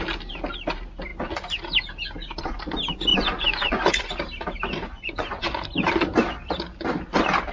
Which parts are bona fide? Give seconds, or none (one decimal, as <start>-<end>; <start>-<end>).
0.0-3.1; 4.1-4.8; 5.6-7.5